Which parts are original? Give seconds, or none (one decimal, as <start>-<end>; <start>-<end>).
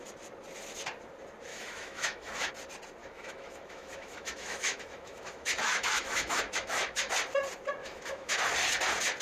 0.0-1.5; 2.5-3.0; 7.1-7.8; 8.4-9.2